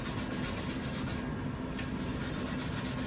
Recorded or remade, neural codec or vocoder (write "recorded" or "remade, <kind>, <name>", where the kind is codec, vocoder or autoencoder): recorded